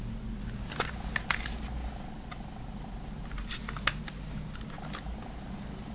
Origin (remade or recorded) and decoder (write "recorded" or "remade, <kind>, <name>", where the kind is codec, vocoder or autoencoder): recorded